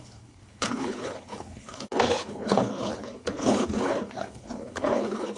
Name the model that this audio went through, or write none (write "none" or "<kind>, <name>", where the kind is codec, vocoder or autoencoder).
codec, HILCodec